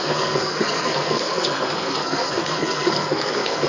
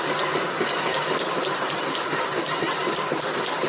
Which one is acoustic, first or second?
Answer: second